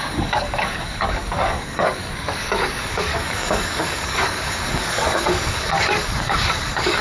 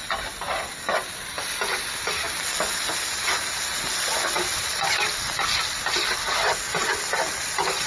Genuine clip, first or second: second